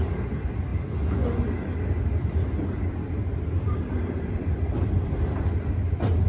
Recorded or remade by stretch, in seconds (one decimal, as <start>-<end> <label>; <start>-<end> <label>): 0.0-6.3 recorded